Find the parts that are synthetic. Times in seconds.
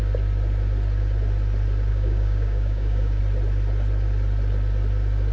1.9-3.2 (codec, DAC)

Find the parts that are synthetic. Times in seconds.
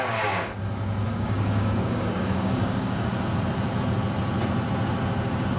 0.0-0.5 (codec, DAC); 1.1-3.1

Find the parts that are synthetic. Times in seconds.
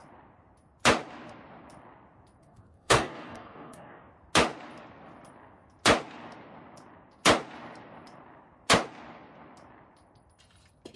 2.4-4.1 (codec, DAC)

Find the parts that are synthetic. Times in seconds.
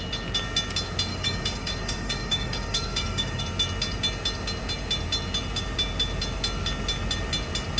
1.1-3.4 (codec, DAC)